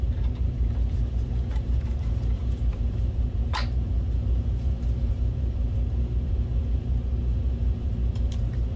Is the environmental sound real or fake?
fake